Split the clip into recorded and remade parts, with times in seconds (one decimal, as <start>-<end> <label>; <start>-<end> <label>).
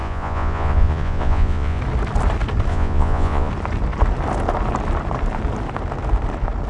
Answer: 0.0-1.8 remade; 1.8-2.7 recorded; 2.7-3.5 remade; 3.5-6.7 recorded